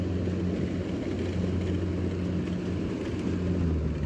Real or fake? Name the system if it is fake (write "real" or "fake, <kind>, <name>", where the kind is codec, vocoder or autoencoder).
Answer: real